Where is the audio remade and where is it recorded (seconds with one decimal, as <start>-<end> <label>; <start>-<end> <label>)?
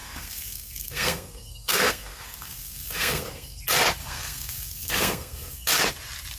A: 0.0-3.6 remade; 3.6-4.0 recorded; 4.0-5.7 remade; 5.7-6.4 recorded